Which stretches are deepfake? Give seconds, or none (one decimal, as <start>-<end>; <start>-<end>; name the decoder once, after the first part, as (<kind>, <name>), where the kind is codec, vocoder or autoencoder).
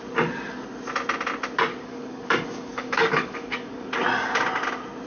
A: 1.7-3.9 (codec, DAC)